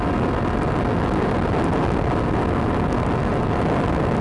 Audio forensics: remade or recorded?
recorded